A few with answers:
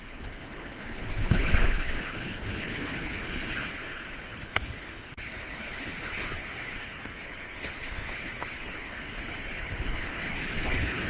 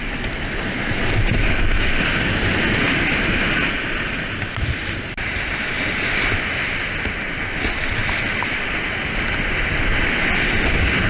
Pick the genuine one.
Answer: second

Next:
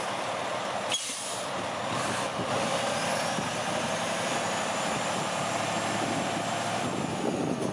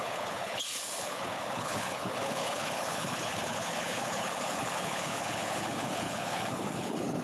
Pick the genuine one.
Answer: first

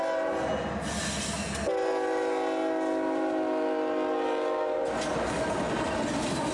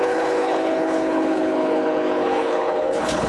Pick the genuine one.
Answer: first